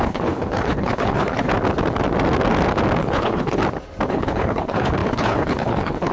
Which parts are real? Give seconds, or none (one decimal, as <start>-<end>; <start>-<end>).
1.5-3.0; 3.6-4.1